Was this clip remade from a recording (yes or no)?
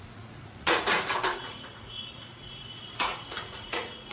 yes